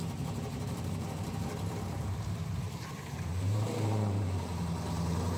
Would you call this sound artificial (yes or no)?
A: yes